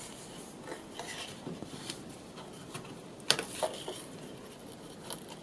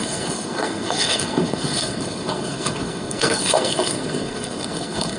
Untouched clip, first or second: first